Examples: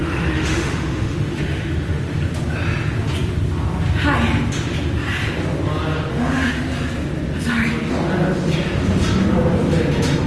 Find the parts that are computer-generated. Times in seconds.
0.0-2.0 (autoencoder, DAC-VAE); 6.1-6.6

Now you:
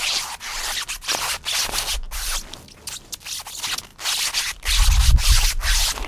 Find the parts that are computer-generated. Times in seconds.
none

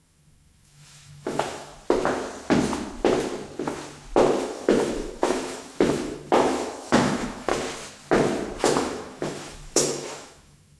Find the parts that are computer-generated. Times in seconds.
0.0-1.7 (autoencoder, DAC-VAE); 4.4-7.5; 8.6-10.8

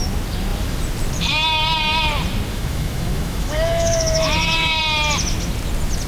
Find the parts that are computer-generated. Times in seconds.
2.5-4.8 (autoencoder, DAC-VAE)